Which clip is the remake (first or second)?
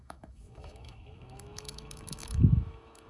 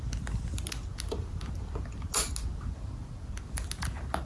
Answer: first